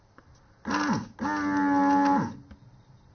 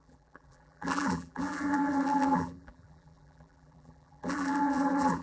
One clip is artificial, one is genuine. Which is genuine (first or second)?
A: first